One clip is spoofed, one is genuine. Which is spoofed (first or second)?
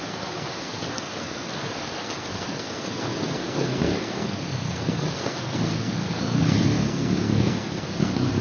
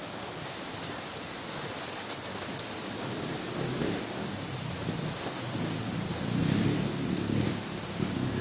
first